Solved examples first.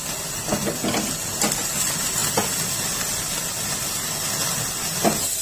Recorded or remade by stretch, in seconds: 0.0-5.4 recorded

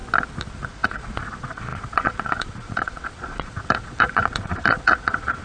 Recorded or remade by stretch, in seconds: 0.0-0.5 recorded; 0.5-5.4 remade

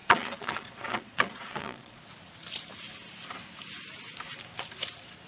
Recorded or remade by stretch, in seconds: 0.0-2.0 remade; 2.0-5.3 recorded

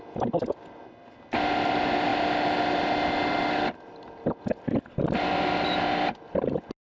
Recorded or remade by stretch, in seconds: 0.0-6.9 recorded

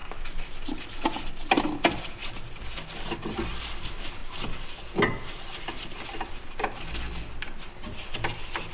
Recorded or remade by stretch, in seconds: 0.0-8.7 recorded

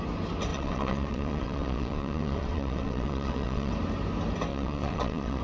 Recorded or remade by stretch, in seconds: 0.0-0.5 recorded; 0.5-3.7 remade; 3.7-4.5 recorded; 4.5-5.4 remade

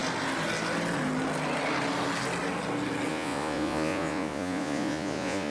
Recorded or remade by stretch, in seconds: 0.0-3.1 recorded; 3.1-5.5 remade

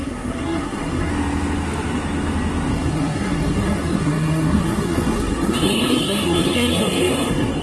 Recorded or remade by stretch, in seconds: 0.0-1.1 remade; 1.1-2.7 recorded; 2.7-7.6 remade